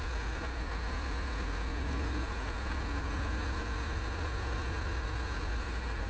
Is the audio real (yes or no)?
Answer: yes